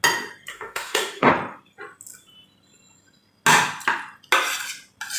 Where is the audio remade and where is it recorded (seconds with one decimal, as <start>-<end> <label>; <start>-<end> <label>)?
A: 0.0-0.5 recorded; 0.5-1.3 remade; 1.3-5.2 recorded